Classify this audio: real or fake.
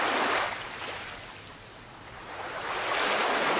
real